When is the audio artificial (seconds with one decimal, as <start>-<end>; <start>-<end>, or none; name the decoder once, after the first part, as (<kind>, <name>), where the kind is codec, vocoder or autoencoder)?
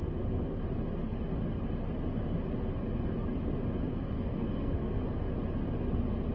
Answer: 3.9-5.0 (codec, SNAC)